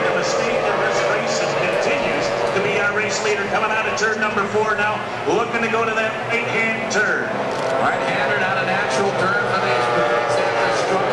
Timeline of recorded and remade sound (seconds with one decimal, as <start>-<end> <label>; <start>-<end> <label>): 0.0-1.6 recorded; 1.6-2.6 remade; 2.6-11.1 recorded